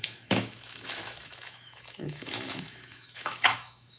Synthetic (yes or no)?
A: yes